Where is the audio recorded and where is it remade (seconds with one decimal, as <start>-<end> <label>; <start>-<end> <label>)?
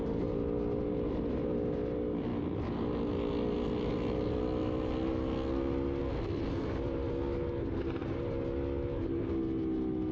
0.0-10.1 recorded